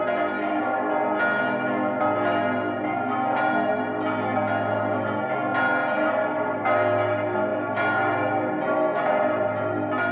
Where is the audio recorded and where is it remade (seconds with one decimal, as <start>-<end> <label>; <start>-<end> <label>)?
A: 0.0-10.1 recorded